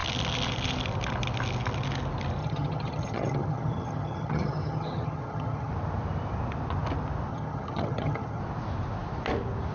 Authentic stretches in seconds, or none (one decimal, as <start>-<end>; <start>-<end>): 0.0-2.4; 5.7-7.3; 8.4-9.7